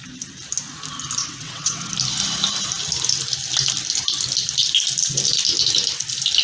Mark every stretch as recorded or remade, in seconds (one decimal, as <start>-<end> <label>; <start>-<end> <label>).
0.0-1.2 recorded; 1.2-1.9 remade; 1.9-6.4 recorded